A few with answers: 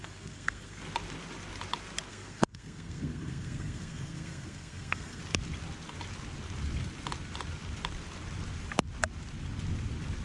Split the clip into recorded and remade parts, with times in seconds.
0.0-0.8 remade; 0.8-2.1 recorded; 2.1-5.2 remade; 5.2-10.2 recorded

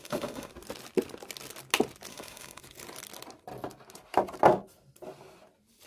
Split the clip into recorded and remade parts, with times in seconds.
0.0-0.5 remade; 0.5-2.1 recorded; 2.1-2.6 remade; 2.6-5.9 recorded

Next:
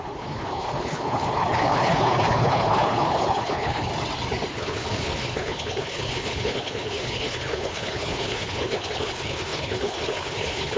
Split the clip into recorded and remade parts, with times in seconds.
0.0-3.9 remade; 3.9-4.5 recorded; 4.5-10.8 remade

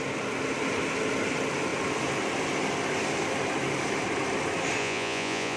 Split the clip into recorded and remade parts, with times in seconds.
0.0-4.8 recorded; 4.8-5.6 remade

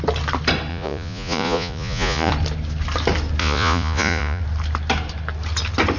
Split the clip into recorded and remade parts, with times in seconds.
0.0-0.7 recorded; 0.7-2.3 remade; 2.3-3.4 recorded; 3.4-4.4 remade; 4.4-6.0 recorded

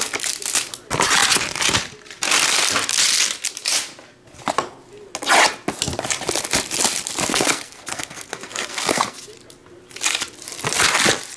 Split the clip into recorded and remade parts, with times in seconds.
0.0-7.3 recorded; 7.3-9.2 remade; 9.2-11.4 recorded